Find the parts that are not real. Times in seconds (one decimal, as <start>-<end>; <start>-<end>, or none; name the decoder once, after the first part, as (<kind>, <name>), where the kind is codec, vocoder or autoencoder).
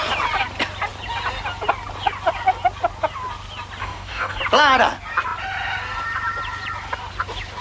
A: 3.8-4.4 (codec, DAC)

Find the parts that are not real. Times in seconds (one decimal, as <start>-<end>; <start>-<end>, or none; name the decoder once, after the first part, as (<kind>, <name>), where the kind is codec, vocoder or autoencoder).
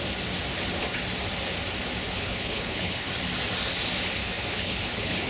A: 2.1-3.1 (codec, HILCodec); 4.2-5.3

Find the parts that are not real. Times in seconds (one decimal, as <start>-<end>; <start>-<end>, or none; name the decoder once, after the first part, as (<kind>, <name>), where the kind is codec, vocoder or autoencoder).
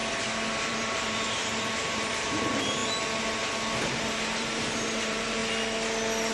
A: 0.7-2.8 (vocoder, BigVGAN v2); 3.9-5.4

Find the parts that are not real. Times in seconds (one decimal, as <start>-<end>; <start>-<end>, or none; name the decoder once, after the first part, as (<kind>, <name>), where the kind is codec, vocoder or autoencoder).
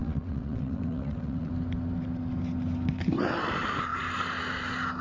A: 0.0-1.5 (vocoder, WaveNeXt)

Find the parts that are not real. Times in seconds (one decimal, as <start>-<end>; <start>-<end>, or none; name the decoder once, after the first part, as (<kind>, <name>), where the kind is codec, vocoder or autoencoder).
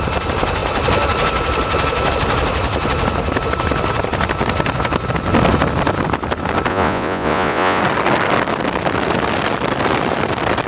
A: 6.7-7.8 (vocoder, Vocos)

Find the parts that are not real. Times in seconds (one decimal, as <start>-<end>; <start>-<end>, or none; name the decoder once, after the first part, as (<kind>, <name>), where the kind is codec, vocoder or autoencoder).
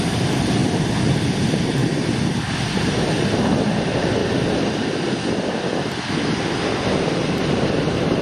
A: 0.0-0.6 (vocoder, BigVGAN v2); 1.4-1.8; 2.7-4.2; 6.9-8.2